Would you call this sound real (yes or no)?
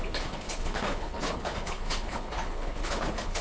no